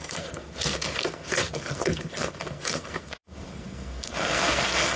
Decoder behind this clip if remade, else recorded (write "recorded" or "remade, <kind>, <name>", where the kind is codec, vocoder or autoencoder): remade, codec, SNAC